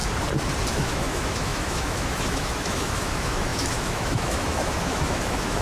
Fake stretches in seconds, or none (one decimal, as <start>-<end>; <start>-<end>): 0.7-5.6